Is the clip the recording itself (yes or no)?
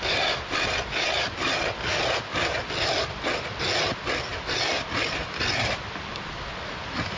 yes